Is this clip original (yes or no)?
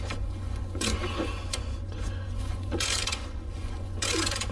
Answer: no